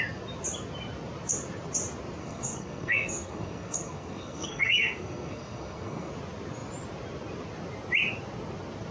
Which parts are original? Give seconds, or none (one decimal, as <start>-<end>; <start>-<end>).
0.0-2.2; 6.1-8.9